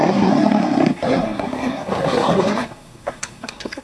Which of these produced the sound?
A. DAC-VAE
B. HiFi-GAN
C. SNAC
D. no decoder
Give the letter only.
C